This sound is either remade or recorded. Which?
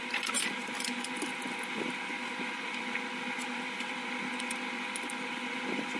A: recorded